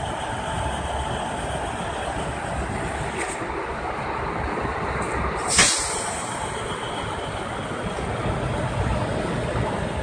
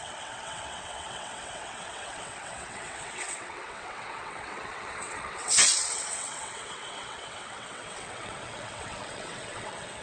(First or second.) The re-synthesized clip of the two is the second